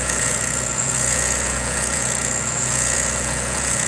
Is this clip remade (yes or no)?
yes